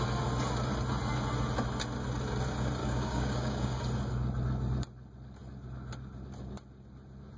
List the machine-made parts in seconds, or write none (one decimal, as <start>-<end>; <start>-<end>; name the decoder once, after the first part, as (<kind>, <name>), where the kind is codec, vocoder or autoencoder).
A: 2.8-3.8 (codec, DAC)